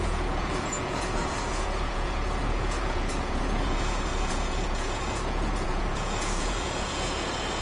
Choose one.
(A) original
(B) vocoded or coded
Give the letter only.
B